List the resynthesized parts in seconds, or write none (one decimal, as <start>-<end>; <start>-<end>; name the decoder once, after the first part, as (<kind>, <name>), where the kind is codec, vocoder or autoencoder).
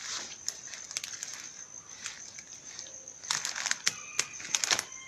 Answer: none